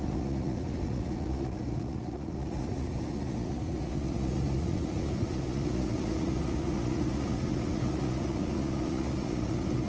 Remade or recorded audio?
remade